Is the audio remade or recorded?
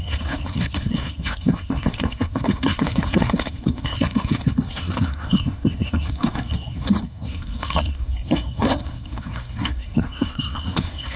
remade